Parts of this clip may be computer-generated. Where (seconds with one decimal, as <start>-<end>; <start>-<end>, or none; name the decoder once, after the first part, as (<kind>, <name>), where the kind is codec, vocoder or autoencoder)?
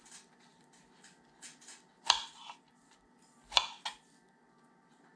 none